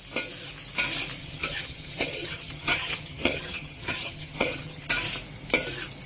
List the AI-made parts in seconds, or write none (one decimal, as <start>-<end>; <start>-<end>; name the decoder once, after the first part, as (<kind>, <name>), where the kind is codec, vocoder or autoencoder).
1.2-4.9 (vocoder, HiFi-GAN)